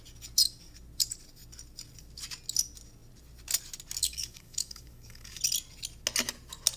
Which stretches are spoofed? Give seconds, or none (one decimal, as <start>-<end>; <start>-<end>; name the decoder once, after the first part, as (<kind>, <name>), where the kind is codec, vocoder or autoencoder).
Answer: 4.0-5.4 (codec, DAC)